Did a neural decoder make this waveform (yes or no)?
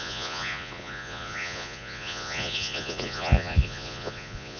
yes